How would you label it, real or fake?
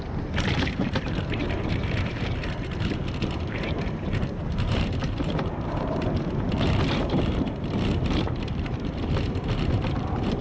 fake